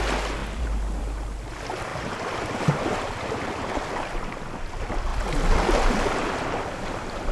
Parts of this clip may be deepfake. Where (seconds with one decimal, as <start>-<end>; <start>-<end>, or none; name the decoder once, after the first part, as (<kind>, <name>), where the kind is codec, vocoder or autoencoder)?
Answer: 1.9-3.8 (vocoder, BigVGAN v2)